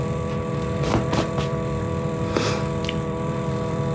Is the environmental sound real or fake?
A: fake